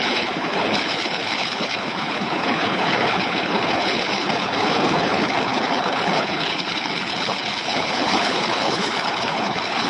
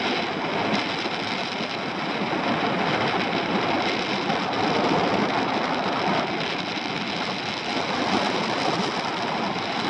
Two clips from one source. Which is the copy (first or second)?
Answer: first